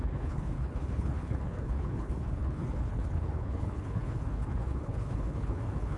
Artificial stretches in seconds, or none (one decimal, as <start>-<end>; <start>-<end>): 0.0-6.0